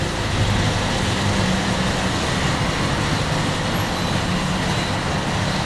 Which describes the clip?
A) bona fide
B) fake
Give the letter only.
A